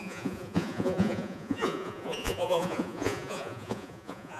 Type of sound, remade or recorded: remade